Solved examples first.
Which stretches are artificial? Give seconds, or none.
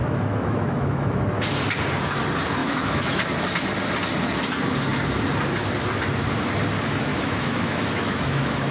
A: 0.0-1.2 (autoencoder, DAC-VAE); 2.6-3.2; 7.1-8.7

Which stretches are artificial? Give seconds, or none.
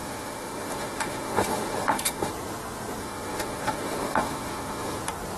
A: 0.0-2.3 (autoencoder, DAC-VAE); 3.0-5.0